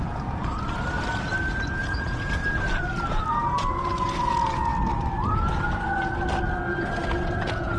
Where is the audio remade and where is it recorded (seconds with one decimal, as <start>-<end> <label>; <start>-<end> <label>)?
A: 0.0-0.5 remade; 0.5-1.8 recorded; 1.8-2.4 remade; 2.4-3.3 recorded; 3.3-4.7 remade; 4.7-6.8 recorded; 6.8-7.8 remade